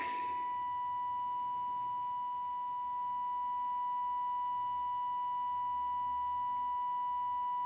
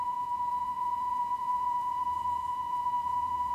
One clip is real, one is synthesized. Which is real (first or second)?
first